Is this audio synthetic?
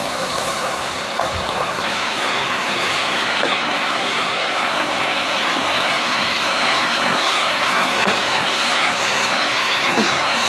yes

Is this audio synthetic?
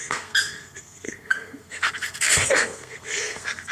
yes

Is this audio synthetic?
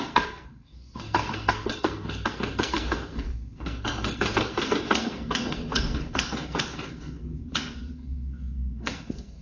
yes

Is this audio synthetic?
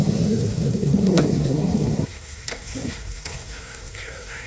yes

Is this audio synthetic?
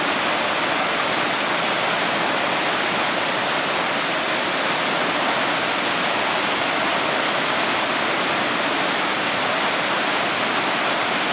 no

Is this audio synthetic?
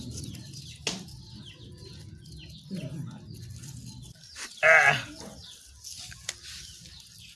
no